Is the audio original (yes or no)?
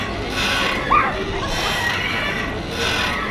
yes